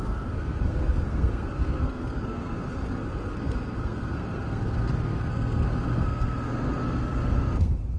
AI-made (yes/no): yes